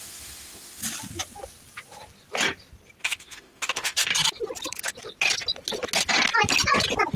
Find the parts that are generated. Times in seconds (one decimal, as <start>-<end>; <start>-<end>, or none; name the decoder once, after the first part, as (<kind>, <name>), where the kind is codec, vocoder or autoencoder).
0.0-0.8 (autoencoder, DAC-VAE); 3.0-4.1